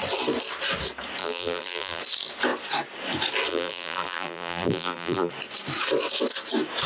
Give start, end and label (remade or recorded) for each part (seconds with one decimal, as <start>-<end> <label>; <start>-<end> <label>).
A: 0.0-1.2 recorded; 1.2-2.0 remade; 2.0-3.5 recorded; 3.5-5.3 remade; 5.3-6.9 recorded